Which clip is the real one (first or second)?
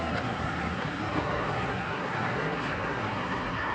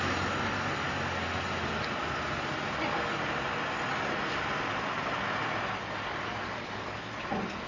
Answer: second